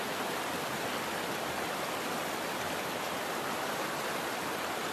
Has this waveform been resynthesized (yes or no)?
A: no